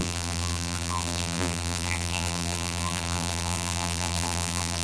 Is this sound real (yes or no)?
no